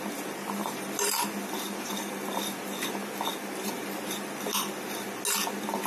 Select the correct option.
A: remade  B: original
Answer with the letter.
B